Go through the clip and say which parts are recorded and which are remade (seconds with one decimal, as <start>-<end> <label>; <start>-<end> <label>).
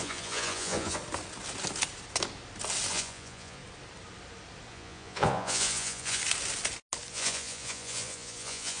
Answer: 0.0-1.0 remade; 1.0-2.9 recorded; 2.9-3.6 remade; 3.6-4.7 recorded; 4.7-6.2 remade; 6.2-7.1 recorded; 7.1-8.8 remade